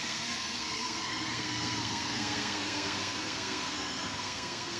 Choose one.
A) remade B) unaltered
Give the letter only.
A